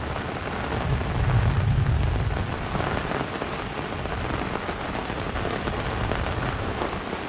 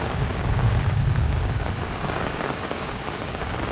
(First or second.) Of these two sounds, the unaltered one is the first